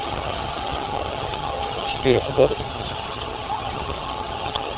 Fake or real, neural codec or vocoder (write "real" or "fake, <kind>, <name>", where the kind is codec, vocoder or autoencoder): fake, vocoder, HiFi-GAN